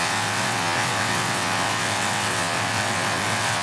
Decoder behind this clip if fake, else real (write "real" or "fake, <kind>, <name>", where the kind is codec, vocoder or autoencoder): fake, vocoder, WaveNeXt